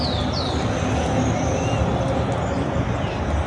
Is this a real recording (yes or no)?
yes